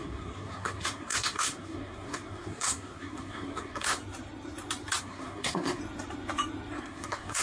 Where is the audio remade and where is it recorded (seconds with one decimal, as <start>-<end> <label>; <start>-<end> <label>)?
0.0-4.0 remade; 4.0-5.0 recorded; 5.0-5.8 remade; 5.8-6.8 recorded; 6.8-7.4 remade